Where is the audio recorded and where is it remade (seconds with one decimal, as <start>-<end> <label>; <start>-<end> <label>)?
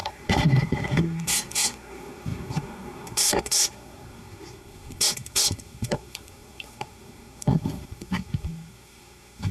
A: 0.0-9.5 remade